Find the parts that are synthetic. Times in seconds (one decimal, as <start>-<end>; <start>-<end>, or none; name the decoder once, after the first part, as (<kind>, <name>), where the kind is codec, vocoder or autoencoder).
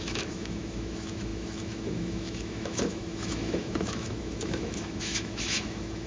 0.0-6.1 (autoencoder, DAC-VAE)